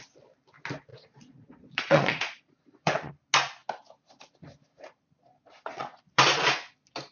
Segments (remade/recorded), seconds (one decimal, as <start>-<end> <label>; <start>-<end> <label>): 0.0-0.9 recorded; 0.9-3.1 remade; 3.1-5.3 recorded; 5.3-6.0 remade; 6.0-7.1 recorded